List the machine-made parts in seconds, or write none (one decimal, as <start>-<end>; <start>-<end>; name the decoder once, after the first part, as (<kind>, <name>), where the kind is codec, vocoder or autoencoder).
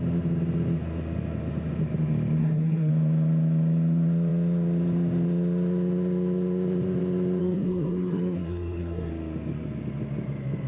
2.4-2.9 (codec, SNAC); 7.4-9.1